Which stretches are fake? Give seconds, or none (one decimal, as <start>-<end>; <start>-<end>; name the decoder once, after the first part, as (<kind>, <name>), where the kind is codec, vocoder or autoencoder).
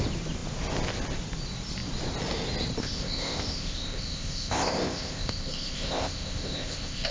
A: 2.8-7.1 (codec, ZipCodec)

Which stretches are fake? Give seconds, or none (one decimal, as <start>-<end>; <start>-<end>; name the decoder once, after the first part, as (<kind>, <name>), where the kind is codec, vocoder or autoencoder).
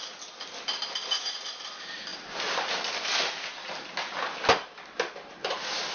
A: none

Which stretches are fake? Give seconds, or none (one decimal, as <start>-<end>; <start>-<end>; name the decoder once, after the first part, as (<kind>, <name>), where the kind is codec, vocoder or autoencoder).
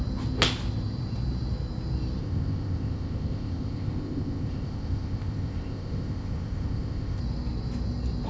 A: 2.2-7.2 (codec, ZipCodec)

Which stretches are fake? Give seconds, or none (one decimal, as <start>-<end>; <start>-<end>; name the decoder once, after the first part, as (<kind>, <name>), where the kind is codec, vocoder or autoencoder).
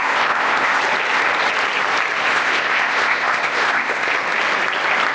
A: 0.0-0.8 (codec, ZipCodec); 2.3-4.1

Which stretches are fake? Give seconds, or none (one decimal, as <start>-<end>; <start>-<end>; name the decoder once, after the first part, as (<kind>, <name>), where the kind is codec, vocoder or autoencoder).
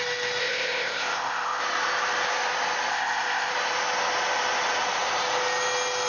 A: 0.4-1.6 (codec, ZipCodec); 2.9-3.5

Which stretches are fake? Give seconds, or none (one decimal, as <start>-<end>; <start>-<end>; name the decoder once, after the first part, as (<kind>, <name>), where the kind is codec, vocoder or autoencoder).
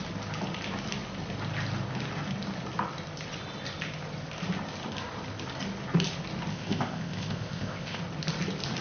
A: 6.5-8.0 (codec, ZipCodec)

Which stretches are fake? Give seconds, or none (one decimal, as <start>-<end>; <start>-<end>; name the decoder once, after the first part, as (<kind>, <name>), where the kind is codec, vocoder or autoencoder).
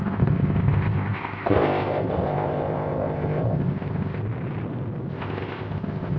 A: 0.0-4.2 (codec, ZipCodec); 5.1-6.2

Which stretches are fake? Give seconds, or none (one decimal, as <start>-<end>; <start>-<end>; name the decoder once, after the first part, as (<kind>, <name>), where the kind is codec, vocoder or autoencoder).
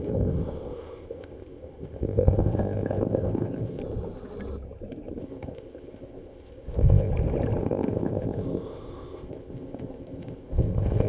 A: 0.0-3.8 (codec, ZipCodec); 5.2-7.1; 7.6-11.1